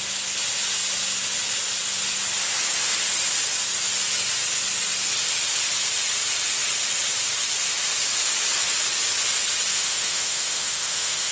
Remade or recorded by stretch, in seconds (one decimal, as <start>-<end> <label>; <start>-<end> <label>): 0.0-9.7 recorded; 9.7-11.3 remade